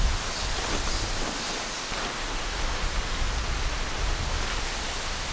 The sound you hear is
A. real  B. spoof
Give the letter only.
A